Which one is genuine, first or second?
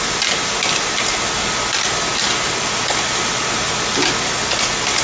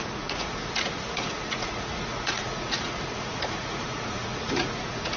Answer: first